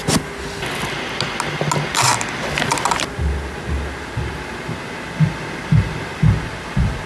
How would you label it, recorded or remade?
recorded